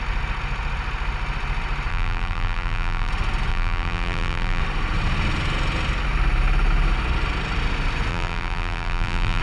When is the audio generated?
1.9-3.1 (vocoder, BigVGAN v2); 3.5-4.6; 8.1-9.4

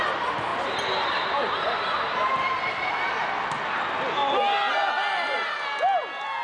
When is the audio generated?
none

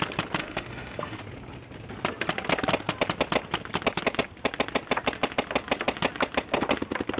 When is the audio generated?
0.4-1.2 (autoencoder, DAC-VAE)

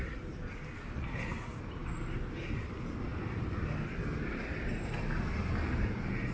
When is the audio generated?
none

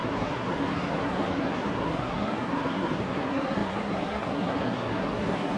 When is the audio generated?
0.0-5.6 (codec, SNAC)

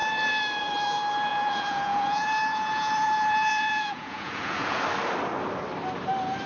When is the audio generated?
1.3-4.8 (vocoder, Vocos)

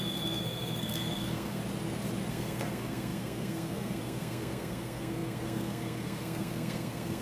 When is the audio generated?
0.0-1.6 (codec, SNAC); 2.3-7.2